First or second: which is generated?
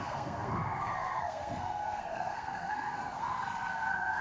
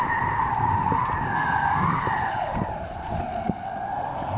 first